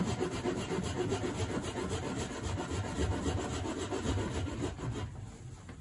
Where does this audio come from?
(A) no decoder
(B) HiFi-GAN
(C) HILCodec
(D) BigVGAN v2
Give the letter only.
A